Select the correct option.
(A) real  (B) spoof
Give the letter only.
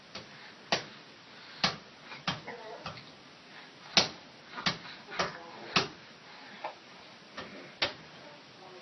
A